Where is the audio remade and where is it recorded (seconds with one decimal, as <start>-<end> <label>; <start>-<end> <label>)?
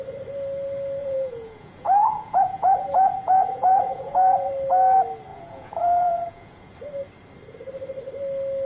0.0-1.0 recorded; 1.0-4.5 remade; 4.5-5.3 recorded; 5.3-6.7 remade; 6.7-8.7 recorded